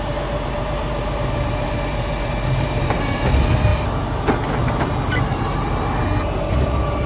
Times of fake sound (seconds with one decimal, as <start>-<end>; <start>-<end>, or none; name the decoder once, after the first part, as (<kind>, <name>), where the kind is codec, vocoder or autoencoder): 0.0-3.7 (vocoder, BigVGAN v2)